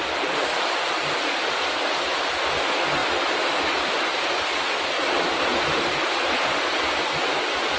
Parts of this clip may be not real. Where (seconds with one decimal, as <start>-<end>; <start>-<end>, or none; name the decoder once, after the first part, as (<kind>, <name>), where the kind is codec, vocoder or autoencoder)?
none

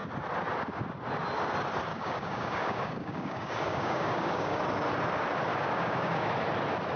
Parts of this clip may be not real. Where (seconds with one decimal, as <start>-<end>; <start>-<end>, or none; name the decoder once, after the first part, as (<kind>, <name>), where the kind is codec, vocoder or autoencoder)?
1.9-4.6 (codec, DAC); 5.5-6.3